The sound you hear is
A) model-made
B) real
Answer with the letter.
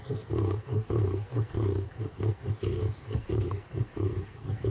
A